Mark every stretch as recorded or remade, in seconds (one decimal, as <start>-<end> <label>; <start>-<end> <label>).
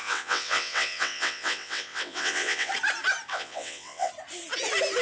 0.0-2.7 remade; 2.7-3.3 recorded; 3.3-4.1 remade; 4.1-5.0 recorded